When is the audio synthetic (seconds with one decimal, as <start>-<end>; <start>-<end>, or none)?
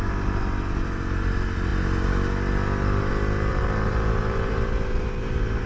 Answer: 3.5-5.7